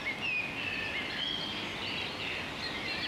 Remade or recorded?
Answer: recorded